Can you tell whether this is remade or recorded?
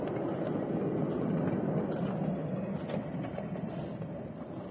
recorded